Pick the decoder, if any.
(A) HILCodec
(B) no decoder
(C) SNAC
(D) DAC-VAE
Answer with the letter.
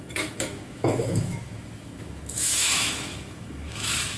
D